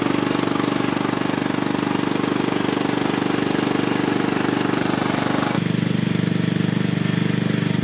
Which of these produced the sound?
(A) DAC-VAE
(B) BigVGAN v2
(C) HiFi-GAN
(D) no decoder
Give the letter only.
D